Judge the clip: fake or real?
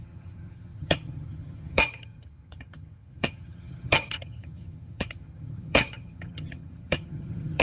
fake